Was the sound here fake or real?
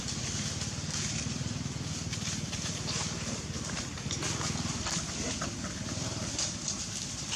real